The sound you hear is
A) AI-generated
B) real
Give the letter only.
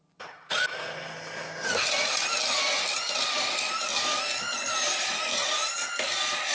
B